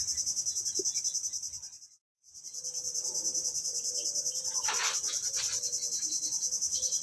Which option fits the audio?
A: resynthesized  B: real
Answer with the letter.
B